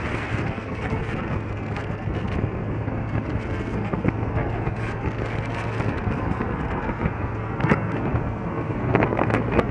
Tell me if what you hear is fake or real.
fake